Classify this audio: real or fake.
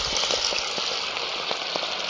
real